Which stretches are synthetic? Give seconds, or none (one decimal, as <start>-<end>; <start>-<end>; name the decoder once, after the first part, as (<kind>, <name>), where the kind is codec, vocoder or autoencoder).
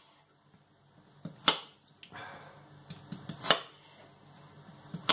none